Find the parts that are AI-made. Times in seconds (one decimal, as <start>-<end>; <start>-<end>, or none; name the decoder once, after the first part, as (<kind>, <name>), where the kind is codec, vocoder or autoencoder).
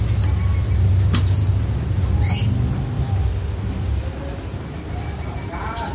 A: none